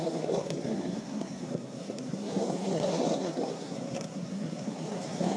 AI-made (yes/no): yes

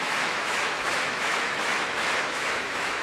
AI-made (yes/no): yes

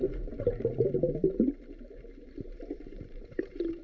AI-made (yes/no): yes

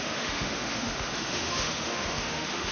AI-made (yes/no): yes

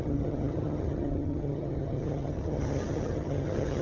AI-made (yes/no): yes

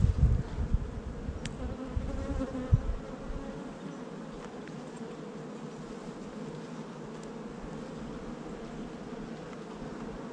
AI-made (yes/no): no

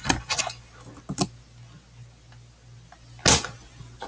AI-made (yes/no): no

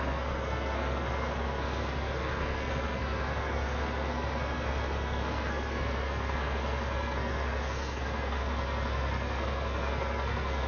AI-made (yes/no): yes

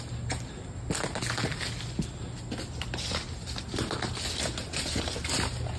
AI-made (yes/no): no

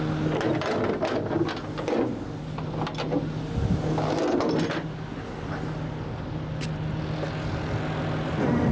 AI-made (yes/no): no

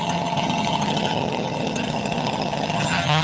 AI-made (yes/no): yes